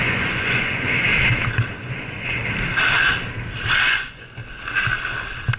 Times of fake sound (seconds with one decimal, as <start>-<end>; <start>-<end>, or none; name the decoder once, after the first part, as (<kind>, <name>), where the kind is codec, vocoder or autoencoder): 0.0-1.1 (vocoder, Vocos); 1.7-2.4; 3.8-4.4